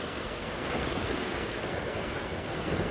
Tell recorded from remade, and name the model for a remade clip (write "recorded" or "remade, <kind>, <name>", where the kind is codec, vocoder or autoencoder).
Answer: remade, codec, SNAC